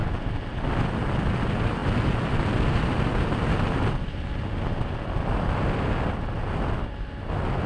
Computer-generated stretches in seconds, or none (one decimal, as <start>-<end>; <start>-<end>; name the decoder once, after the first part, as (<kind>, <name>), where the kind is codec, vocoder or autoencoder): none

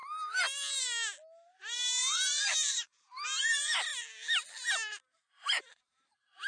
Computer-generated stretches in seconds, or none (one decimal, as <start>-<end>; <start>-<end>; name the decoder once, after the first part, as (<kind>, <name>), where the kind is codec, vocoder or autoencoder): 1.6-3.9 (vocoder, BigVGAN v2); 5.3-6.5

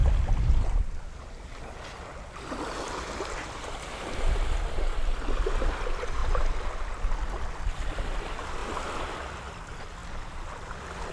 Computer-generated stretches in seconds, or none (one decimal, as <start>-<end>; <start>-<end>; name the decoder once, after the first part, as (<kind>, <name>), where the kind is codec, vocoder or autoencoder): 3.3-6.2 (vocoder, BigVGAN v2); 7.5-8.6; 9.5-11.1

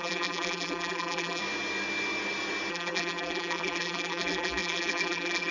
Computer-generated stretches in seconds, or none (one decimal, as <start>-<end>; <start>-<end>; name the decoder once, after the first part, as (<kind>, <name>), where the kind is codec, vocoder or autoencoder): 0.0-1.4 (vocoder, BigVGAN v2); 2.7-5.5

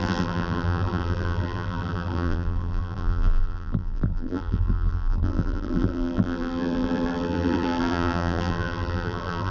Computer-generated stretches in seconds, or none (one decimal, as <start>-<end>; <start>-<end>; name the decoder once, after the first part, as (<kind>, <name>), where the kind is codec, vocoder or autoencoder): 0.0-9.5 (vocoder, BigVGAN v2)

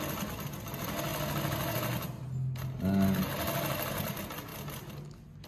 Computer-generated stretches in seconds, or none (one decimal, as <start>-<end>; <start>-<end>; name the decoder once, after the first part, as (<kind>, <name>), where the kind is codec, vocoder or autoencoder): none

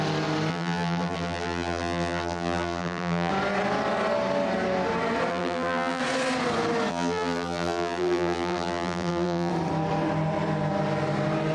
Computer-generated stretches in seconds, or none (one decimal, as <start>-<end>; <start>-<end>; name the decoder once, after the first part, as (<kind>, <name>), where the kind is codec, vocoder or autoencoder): 0.5-3.3 (vocoder, BigVGAN v2); 5.3-6.0; 6.9-9.5

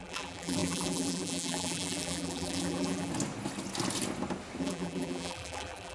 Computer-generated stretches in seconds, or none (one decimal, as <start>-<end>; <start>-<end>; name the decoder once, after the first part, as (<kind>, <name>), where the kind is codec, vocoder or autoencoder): 0.0-3.1 (vocoder, BigVGAN v2); 4.6-5.9